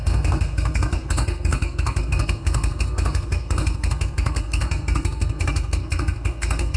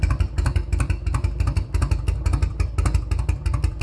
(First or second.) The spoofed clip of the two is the first